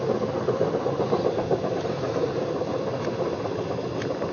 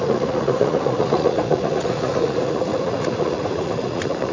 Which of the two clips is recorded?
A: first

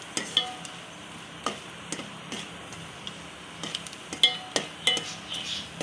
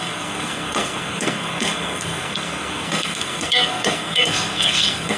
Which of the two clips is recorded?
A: first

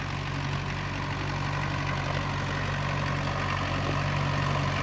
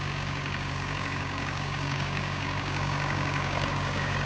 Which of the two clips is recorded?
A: first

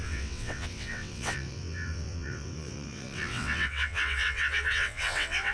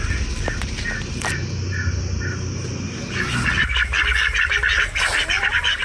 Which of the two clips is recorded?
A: second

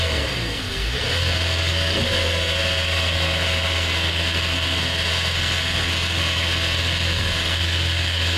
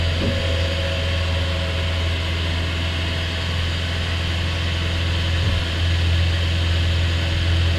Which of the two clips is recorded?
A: second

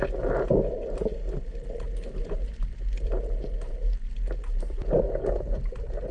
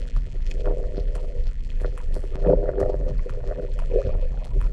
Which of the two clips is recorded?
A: first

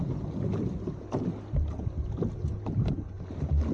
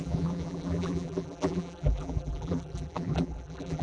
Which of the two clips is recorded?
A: first